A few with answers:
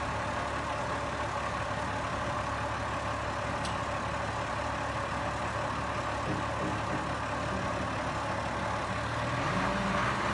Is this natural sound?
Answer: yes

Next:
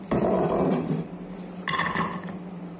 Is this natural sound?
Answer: no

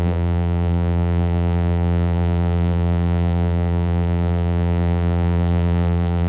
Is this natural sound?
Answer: no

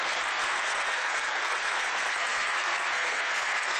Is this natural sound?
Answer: no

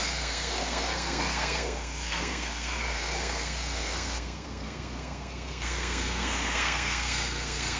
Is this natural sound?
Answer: no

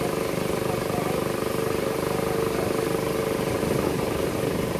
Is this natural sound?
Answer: yes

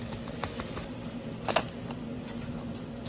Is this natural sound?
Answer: yes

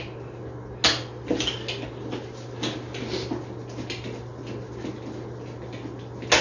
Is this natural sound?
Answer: yes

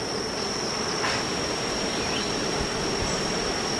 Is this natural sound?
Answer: yes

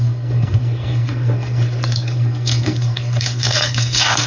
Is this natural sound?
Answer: no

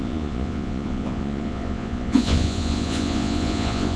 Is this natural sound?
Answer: no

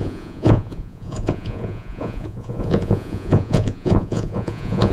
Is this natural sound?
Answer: no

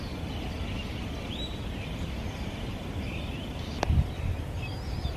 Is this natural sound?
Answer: yes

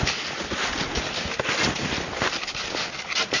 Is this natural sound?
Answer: yes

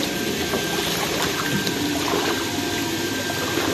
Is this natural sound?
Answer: yes